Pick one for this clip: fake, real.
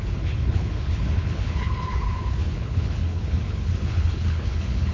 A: fake